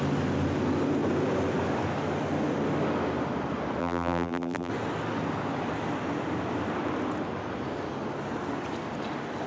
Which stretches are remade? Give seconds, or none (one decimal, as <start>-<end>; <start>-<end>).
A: 3.8-4.7